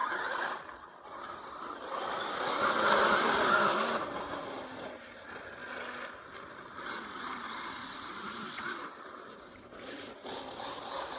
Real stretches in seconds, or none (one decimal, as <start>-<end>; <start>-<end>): 0.0-11.2